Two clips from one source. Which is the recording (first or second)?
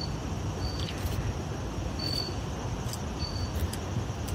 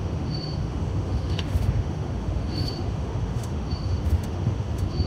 first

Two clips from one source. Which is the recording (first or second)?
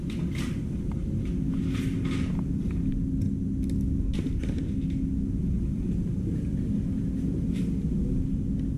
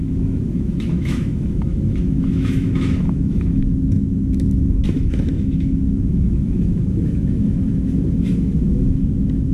first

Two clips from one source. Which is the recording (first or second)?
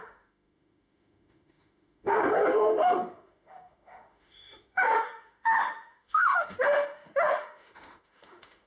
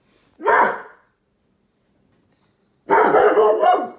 second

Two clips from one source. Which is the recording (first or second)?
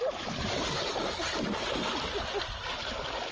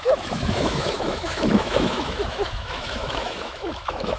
first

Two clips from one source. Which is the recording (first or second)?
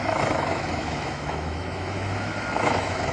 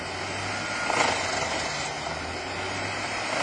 second